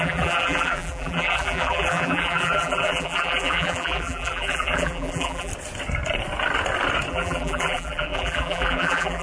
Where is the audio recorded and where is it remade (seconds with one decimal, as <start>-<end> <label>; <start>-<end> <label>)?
0.0-5.5 remade; 5.5-7.1 recorded; 7.1-9.2 remade